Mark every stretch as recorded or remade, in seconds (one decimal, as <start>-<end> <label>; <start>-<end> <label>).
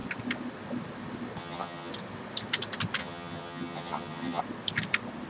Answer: 0.0-1.4 recorded; 1.4-1.9 remade; 1.9-3.0 recorded; 3.0-4.4 remade; 4.4-5.3 recorded